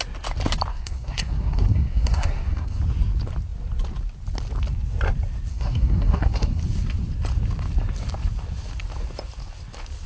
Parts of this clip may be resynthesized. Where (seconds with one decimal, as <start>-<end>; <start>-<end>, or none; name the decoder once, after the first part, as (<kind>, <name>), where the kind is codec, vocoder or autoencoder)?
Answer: 0.7-2.8 (codec, SNAC); 5.5-6.6